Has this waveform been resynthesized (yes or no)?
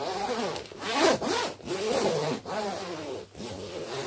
no